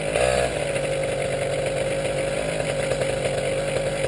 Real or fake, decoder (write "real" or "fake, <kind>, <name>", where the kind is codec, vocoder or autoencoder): real